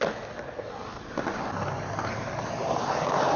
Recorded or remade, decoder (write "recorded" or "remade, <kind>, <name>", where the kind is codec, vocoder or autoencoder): recorded